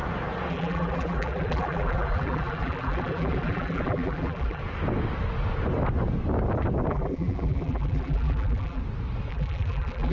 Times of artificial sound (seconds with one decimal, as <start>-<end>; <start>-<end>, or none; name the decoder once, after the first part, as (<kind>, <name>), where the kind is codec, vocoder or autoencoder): 0.5-4.6 (vocoder, BigVGAN v2); 6.9-8.8; 9.3-10.1